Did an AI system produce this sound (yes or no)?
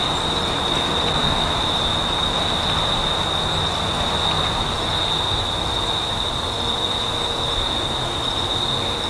no